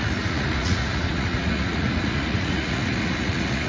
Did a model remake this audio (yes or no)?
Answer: yes